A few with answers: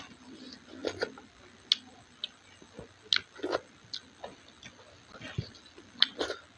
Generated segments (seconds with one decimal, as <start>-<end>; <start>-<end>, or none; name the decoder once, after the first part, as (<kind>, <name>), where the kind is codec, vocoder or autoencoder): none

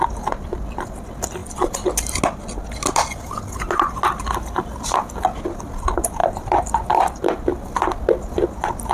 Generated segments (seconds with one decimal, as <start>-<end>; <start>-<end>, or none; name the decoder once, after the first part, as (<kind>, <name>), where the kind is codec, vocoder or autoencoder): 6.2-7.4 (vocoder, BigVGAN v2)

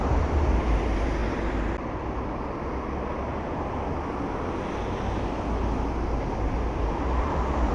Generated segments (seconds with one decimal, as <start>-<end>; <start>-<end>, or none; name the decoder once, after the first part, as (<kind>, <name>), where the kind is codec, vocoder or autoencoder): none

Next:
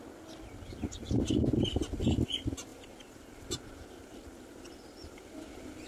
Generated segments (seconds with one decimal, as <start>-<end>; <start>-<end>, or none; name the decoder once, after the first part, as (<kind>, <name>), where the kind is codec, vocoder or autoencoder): 2.7-4.7 (vocoder, BigVGAN v2)

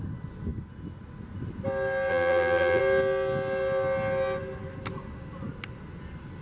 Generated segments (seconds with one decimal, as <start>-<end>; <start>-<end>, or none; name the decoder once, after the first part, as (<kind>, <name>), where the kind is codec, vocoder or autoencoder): 2.1-2.8 (vocoder, BigVGAN v2)

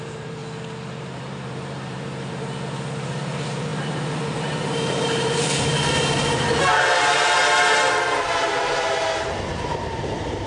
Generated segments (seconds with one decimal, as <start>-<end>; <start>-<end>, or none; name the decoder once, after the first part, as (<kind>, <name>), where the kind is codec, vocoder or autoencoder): 0.0-0.4 (vocoder, BigVGAN v2); 1.0-7.4; 9.8-10.5

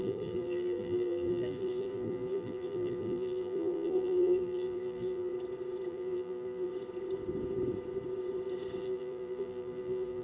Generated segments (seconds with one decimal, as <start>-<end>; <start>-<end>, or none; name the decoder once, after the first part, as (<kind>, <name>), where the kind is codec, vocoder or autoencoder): 0.0-5.3 (vocoder, BigVGAN v2); 5.9-6.7; 8.8-10.2